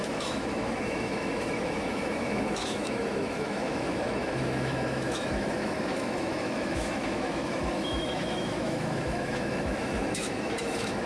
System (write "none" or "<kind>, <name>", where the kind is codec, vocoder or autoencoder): autoencoder, DAC-VAE